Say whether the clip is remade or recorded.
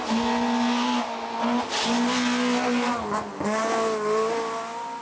recorded